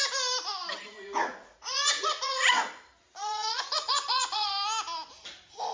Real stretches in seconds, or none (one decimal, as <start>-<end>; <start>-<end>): 0.0-1.2; 2.6-3.2; 4.5-5.7